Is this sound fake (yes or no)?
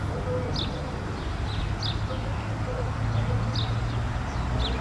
no